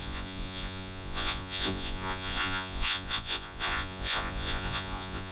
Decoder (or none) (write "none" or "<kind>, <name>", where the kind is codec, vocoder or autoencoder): vocoder, Vocos